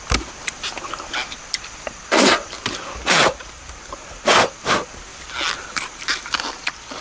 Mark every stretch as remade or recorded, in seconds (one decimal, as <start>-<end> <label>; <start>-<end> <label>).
0.0-7.0 recorded